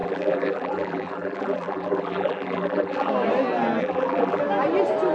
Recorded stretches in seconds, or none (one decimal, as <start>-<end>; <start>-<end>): 3.1-3.8; 4.4-5.1